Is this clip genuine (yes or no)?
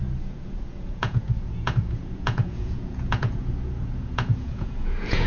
no